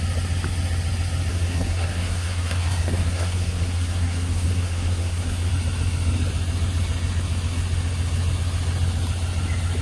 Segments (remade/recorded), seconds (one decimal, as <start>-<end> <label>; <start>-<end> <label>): 0.0-1.3 recorded; 1.3-5.5 remade; 5.5-9.8 recorded